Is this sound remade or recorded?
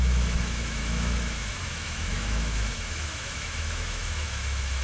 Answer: remade